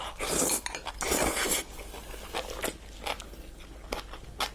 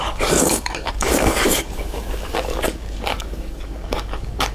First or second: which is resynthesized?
second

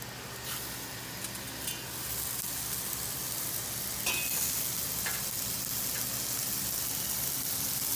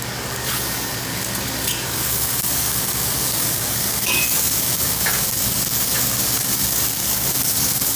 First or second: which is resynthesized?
second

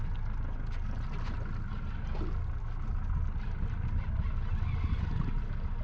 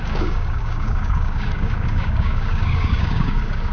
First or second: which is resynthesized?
second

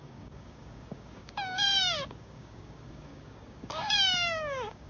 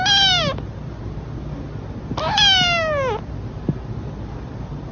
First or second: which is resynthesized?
first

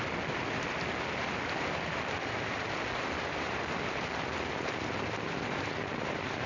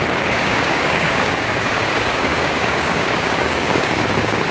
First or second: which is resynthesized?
second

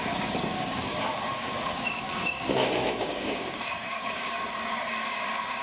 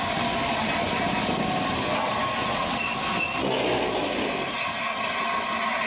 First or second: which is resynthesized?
first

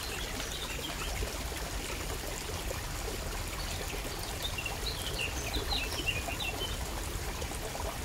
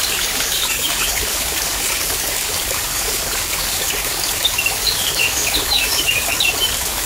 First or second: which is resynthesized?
second